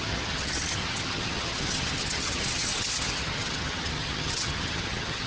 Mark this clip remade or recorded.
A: remade